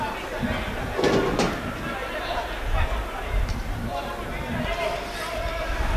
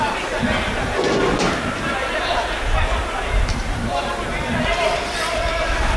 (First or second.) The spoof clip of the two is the second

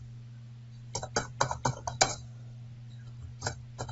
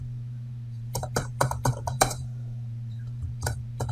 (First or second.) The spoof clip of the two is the second